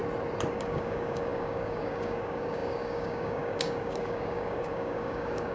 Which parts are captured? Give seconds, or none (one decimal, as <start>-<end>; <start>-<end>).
0.0-0.5